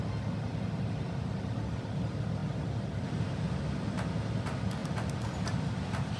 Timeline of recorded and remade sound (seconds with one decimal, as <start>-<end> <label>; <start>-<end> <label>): 0.0-2.4 recorded; 2.4-3.3 remade; 3.3-4.8 recorded; 4.8-6.2 remade